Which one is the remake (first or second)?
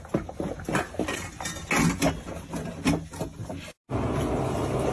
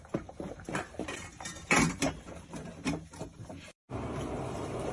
second